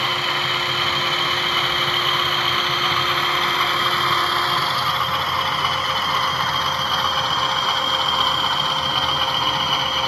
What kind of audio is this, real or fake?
real